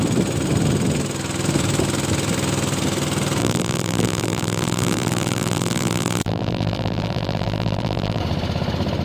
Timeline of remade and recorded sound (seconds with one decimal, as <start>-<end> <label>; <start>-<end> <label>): 0.0-3.4 recorded; 3.4-8.2 remade; 8.2-9.0 recorded